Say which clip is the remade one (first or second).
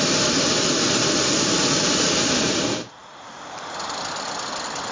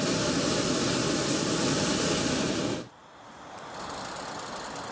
first